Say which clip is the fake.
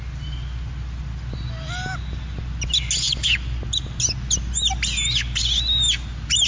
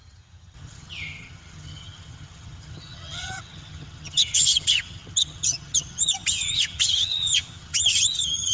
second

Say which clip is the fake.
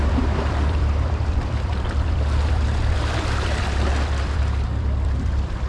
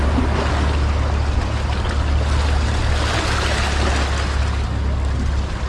first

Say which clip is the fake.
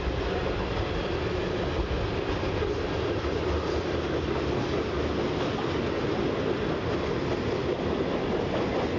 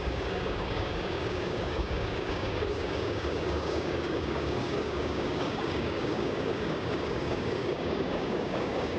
second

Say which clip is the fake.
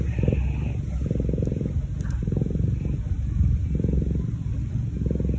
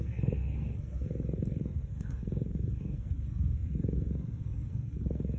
second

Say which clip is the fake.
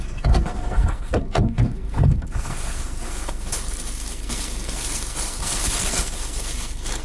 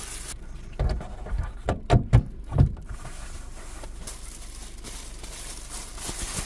first